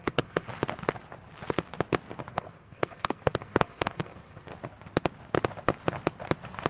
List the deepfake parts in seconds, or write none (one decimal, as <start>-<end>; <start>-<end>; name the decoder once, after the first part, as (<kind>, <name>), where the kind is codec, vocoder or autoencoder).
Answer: 0.0-0.5 (codec, SNAC); 2.3-4.5